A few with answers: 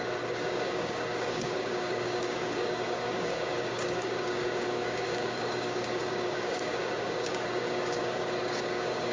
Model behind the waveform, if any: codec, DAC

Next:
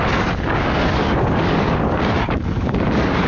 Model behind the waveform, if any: codec, DAC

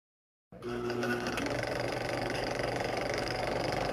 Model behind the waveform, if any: codec, DAC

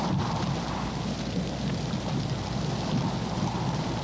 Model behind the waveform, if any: none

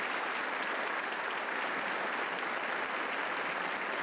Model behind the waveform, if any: none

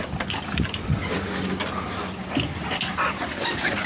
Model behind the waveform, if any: none